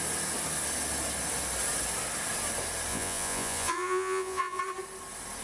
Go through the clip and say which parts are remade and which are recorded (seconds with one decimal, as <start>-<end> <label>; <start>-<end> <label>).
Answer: 0.0-2.9 recorded; 2.9-4.6 remade; 4.6-5.4 recorded